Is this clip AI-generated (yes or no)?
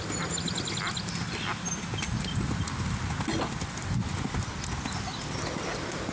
no